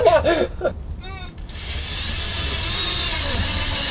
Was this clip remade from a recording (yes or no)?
no